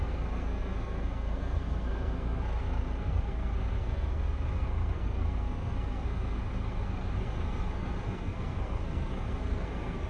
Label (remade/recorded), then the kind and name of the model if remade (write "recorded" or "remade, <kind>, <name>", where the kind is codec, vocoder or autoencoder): remade, codec, SNAC